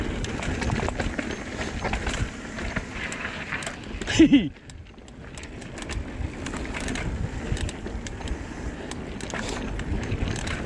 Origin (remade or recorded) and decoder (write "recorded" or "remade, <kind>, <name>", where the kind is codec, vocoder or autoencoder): recorded